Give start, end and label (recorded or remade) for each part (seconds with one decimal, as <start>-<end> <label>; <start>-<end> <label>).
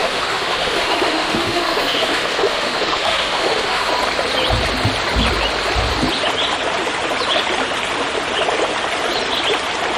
0.0-3.9 remade; 3.9-10.0 recorded